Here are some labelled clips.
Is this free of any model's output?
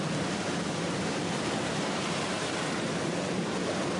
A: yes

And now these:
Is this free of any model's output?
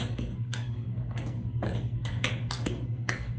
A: no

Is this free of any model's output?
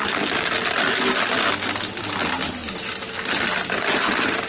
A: yes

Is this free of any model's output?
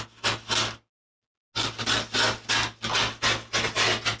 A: yes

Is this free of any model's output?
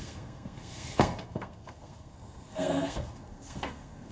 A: no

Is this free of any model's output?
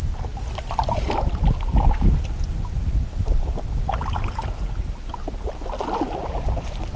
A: yes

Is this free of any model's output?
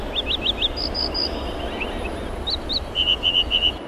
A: yes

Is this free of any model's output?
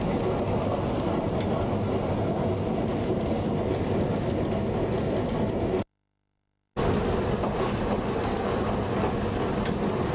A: yes